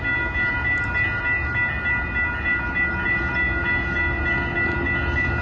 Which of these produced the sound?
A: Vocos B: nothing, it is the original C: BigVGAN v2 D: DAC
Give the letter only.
B